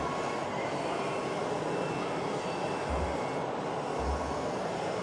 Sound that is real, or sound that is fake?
real